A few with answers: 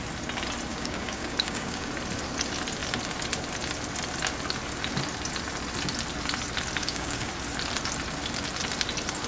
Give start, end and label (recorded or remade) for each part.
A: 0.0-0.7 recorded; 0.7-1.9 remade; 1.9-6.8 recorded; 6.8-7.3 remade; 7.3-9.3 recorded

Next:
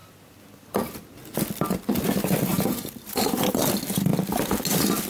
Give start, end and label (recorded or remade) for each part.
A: 0.0-2.5 recorded; 2.5-3.4 remade; 3.4-5.1 recorded